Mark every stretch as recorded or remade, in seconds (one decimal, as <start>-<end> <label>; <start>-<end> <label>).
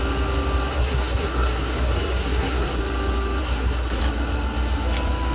0.0-0.7 recorded; 0.7-2.8 remade; 2.8-3.4 recorded; 3.4-4.0 remade; 4.0-5.3 recorded